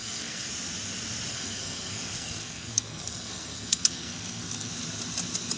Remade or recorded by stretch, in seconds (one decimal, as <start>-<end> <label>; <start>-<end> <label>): 0.0-0.5 remade; 0.5-1.3 recorded; 1.3-4.7 remade; 4.7-5.6 recorded